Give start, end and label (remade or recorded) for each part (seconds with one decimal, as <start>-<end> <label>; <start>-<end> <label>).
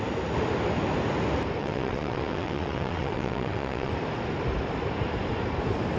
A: 0.0-1.6 recorded; 1.6-3.9 remade; 3.9-6.0 recorded